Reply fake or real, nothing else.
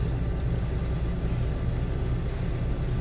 real